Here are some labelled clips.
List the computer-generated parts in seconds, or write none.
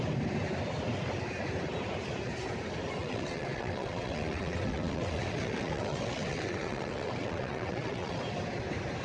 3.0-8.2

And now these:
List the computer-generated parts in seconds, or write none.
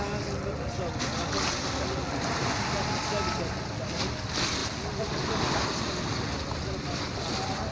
none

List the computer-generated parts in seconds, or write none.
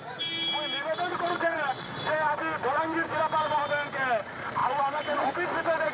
1.1-1.9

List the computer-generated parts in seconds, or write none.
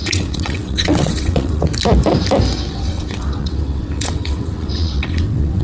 0.0-1.7; 2.7-5.6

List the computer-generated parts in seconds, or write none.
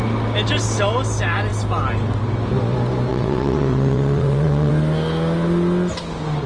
3.1-4.7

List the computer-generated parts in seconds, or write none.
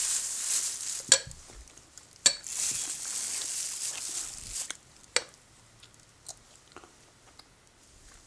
none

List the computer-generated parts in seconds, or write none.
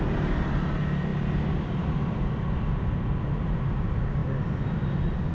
none